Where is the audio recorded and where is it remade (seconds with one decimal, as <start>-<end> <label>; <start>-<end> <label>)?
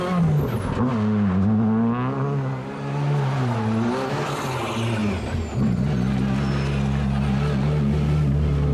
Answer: 0.0-8.7 recorded